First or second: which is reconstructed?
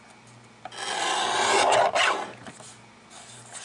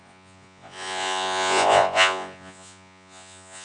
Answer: second